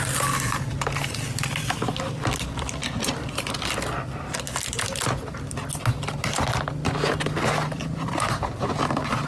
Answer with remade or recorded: recorded